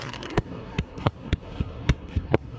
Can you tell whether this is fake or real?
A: fake